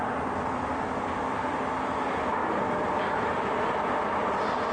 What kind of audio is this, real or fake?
real